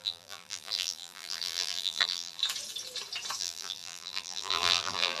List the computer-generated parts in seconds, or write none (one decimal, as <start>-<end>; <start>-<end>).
0.0-2.4; 3.4-5.2